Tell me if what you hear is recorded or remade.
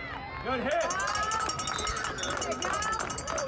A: recorded